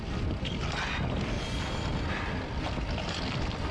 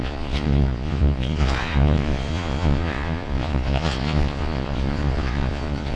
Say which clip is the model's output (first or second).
second